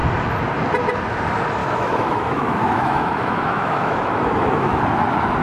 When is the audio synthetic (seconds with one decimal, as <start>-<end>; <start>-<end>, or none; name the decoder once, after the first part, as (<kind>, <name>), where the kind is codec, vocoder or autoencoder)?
1.6-4.8 (autoencoder, DAC-VAE)